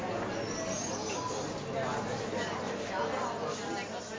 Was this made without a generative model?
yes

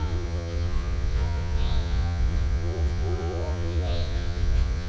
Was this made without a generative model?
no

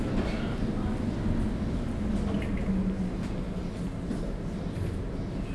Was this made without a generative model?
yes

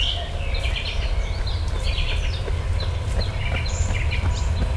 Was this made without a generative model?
yes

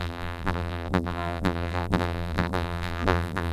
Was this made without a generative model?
no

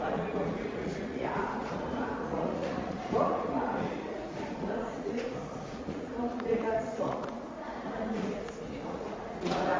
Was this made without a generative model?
no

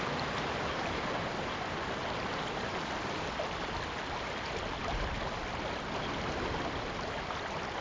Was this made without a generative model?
yes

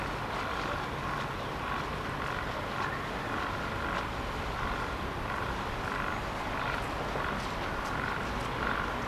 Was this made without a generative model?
yes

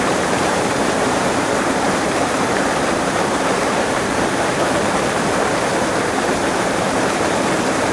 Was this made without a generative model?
no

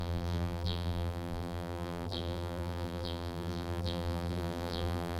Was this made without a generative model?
no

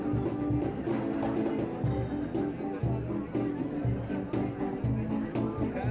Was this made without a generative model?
yes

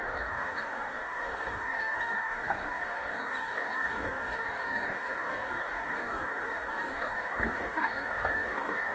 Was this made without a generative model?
no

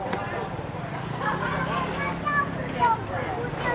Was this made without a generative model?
yes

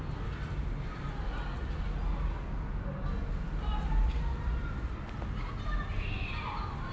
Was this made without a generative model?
yes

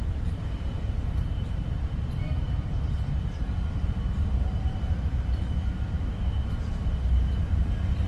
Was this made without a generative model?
no